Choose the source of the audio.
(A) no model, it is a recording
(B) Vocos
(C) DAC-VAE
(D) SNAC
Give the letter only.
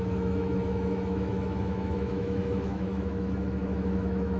C